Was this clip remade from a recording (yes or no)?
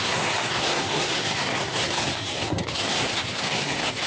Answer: yes